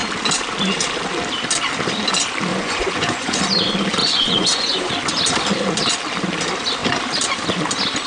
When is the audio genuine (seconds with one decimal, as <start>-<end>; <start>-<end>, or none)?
0.0-2.5; 3.4-4.0; 4.9-8.1